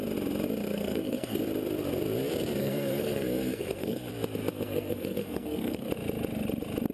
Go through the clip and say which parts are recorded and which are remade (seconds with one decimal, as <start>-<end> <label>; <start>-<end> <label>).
0.0-0.6 recorded; 0.6-1.4 remade; 1.4-2.6 recorded; 2.6-4.1 remade; 4.1-4.5 recorded; 4.5-5.9 remade; 5.9-6.9 recorded